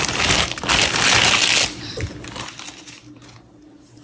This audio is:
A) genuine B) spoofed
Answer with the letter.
A